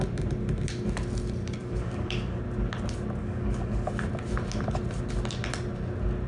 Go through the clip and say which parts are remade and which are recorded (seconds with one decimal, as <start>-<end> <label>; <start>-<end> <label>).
0.0-1.6 recorded; 1.6-2.4 remade; 2.4-3.2 recorded; 3.2-3.9 remade; 3.9-6.3 recorded

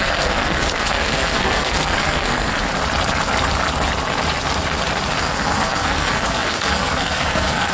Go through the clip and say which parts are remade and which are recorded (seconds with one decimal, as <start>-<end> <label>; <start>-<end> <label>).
0.0-2.5 remade; 2.5-5.2 recorded; 5.2-7.7 remade

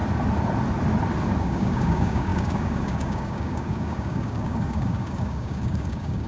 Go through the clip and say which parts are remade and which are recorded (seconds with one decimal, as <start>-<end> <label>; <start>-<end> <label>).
0.0-1.4 recorded; 1.4-6.3 remade

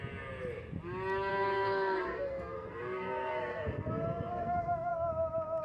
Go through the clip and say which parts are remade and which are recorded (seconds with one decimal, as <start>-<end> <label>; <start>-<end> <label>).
0.0-1.3 recorded; 1.3-3.9 remade; 3.9-4.3 recorded; 4.3-4.9 remade; 4.9-5.6 recorded

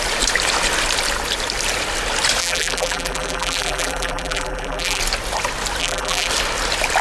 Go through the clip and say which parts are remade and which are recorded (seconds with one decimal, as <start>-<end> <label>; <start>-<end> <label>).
0.0-2.4 recorded; 2.4-5.0 remade; 5.0-5.8 recorded; 5.8-6.3 remade; 6.3-7.0 recorded

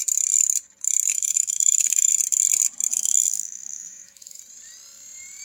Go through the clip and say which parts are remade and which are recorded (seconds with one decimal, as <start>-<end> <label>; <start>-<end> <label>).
0.0-1.1 recorded; 1.1-2.1 remade; 2.1-2.9 recorded; 2.9-4.4 remade; 4.4-5.4 recorded

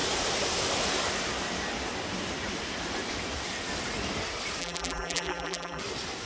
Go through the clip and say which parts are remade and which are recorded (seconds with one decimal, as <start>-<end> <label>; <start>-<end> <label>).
0.0-4.6 recorded; 4.6-5.8 remade; 5.8-6.3 recorded